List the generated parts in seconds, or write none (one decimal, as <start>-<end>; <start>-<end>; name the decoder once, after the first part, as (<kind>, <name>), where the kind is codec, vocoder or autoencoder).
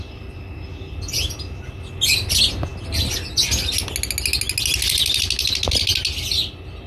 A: none